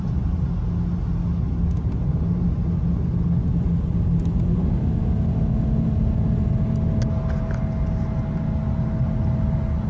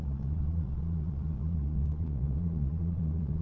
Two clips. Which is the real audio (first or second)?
first